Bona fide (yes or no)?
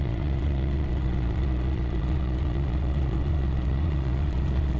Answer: no